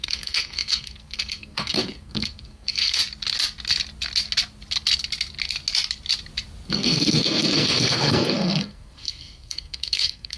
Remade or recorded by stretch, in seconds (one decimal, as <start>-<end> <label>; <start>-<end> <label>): 0.0-3.0 remade; 3.0-6.7 recorded; 6.7-10.4 remade